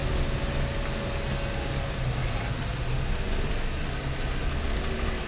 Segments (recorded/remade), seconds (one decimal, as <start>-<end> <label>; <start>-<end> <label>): 0.0-5.3 recorded